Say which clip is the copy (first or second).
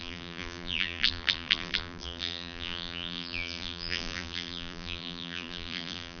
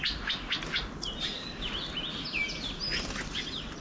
first